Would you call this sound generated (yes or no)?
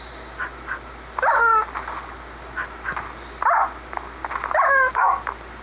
no